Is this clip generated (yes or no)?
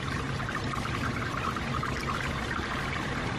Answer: no